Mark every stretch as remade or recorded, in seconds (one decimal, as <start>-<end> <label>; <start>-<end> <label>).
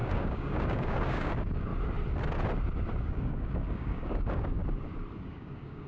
0.0-1.7 remade; 1.7-3.0 recorded; 3.0-4.6 remade; 4.6-5.2 recorded; 5.2-5.9 remade